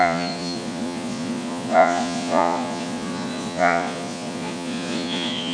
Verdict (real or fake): fake